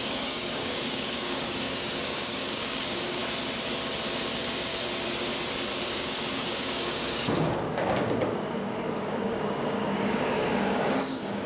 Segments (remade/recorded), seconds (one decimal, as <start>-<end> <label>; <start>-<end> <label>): 0.0-3.2 remade; 3.2-5.8 recorded; 5.8-11.5 remade